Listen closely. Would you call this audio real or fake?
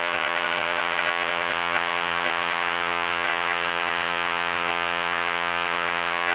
fake